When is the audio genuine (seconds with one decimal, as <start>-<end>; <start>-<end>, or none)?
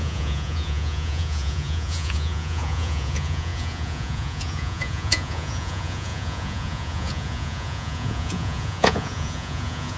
none